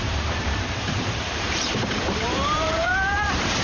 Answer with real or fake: fake